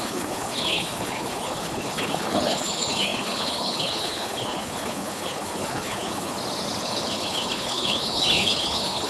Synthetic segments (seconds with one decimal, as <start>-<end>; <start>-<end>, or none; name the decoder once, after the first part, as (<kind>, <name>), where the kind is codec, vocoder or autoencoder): 0.0-6.3 (codec, HILCodec); 6.8-9.1